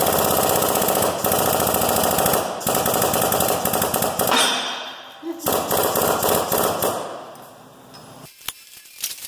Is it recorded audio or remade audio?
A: recorded